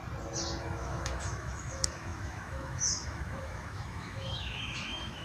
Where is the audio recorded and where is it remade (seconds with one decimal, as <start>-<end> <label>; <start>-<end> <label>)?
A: 0.0-0.6 recorded; 0.6-5.2 remade